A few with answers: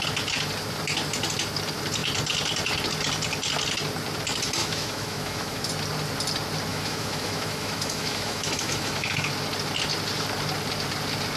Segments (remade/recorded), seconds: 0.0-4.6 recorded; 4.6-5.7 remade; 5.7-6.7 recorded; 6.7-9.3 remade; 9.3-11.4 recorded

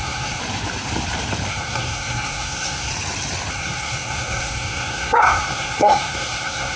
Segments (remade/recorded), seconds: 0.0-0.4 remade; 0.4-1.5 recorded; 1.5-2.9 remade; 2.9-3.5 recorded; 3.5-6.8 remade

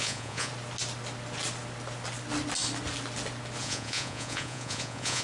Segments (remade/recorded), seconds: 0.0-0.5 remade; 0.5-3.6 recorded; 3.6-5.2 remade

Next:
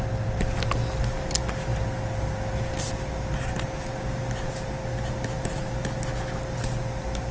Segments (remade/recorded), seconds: 0.0-7.3 recorded

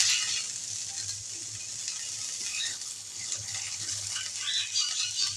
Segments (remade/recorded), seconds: 0.0-2.5 recorded; 2.5-4.2 remade; 4.2-5.4 recorded

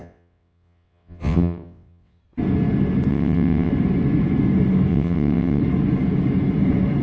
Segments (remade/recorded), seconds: 0.0-2.2 remade; 2.2-3.1 recorded; 3.1-3.7 remade; 3.7-4.9 recorded; 4.9-5.6 remade; 5.6-7.0 recorded